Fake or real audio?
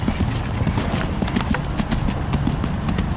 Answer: real